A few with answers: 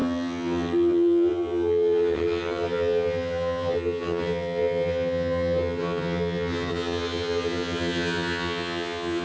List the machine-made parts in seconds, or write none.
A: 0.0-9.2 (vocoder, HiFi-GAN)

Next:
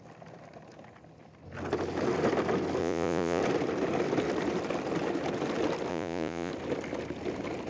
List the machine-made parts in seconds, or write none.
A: 2.8-3.4 (vocoder, Vocos); 5.9-6.5